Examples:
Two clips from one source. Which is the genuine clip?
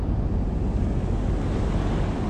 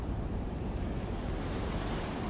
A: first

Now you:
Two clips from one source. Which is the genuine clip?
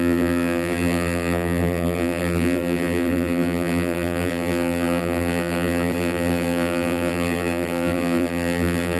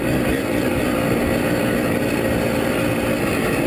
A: second